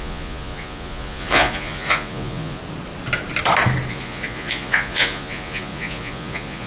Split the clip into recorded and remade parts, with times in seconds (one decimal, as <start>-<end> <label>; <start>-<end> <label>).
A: 0.0-2.6 remade; 2.6-3.9 recorded; 3.9-6.7 remade